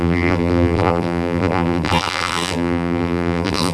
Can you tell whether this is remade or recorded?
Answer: remade